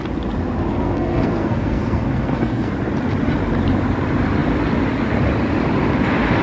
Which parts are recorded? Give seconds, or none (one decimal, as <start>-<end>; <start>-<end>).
0.0-0.7; 2.7-6.4